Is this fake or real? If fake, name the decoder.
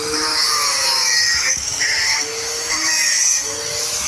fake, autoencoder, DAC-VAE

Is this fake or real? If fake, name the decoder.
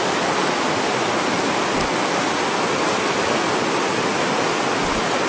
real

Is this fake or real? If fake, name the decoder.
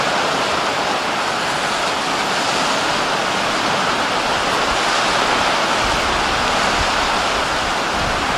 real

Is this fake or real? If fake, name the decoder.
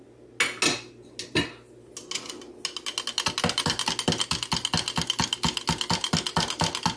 real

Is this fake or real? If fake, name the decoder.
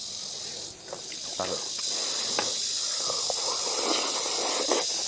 real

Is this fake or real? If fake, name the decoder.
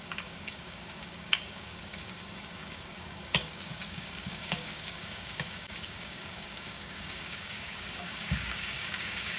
fake, codec, DAC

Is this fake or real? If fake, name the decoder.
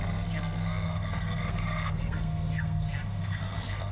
fake, codec, SNAC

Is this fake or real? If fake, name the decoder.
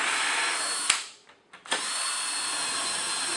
real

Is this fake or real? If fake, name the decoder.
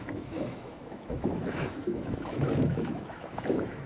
fake, autoencoder, DAC-VAE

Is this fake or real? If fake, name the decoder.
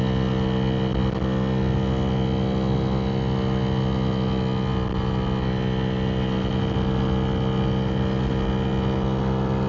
real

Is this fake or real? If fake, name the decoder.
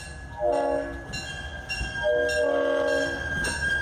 real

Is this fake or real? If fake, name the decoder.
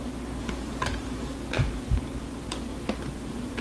real